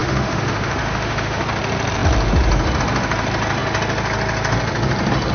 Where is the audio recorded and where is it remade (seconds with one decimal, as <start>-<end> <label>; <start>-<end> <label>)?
0.0-1.4 remade; 1.4-5.3 recorded